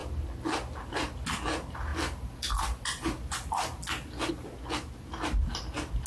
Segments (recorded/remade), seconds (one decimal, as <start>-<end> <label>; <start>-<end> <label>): 0.0-1.9 recorded; 1.9-4.3 remade; 4.3-6.1 recorded